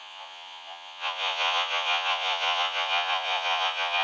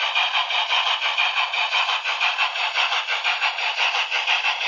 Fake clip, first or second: first